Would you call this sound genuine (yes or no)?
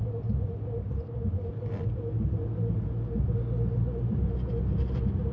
yes